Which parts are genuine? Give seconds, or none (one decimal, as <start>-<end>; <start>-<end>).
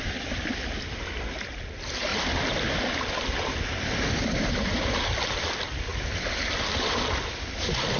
0.0-8.0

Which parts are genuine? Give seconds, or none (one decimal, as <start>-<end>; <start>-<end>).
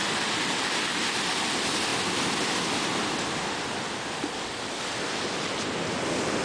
0.0-6.4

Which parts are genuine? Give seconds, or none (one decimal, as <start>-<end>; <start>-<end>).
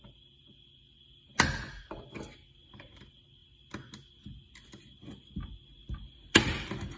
0.0-7.0